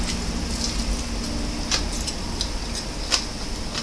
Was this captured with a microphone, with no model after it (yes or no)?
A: yes